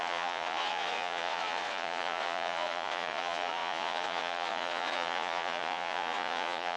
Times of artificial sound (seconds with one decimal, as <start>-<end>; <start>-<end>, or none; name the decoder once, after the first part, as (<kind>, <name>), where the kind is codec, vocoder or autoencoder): 0.0-6.8 (vocoder, Vocos)